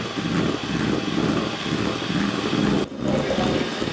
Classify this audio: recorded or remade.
recorded